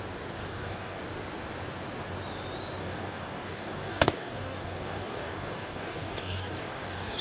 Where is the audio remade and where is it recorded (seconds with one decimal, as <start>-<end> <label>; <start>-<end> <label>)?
0.0-0.4 recorded; 0.4-1.0 remade; 1.0-2.8 recorded; 2.8-7.2 remade